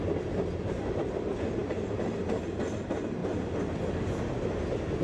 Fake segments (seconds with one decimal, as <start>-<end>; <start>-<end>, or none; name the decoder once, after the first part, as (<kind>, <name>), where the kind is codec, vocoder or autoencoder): none